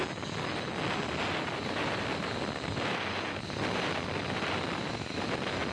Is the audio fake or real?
real